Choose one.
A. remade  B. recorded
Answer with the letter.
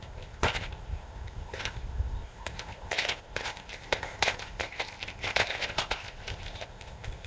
A